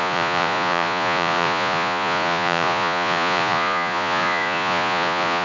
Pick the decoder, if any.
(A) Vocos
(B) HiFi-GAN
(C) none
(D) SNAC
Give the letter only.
A